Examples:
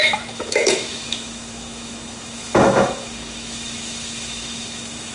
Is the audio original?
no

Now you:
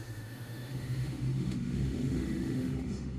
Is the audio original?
no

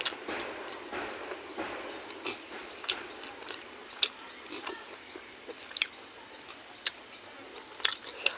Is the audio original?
yes